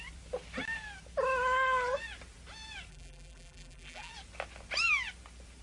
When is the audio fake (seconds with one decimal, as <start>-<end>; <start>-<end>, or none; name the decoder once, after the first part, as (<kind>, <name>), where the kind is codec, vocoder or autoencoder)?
2.9-4.1 (vocoder, BigVGAN v2)

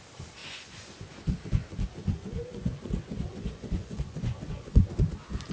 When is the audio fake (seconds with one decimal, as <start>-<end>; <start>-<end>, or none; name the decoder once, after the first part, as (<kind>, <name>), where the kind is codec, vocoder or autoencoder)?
0.4-1.1 (vocoder, Vocos); 2.0-5.0